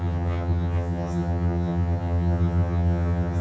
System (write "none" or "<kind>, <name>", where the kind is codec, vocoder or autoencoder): vocoder, HiFi-GAN